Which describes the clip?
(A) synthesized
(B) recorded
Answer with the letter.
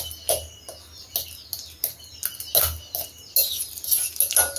B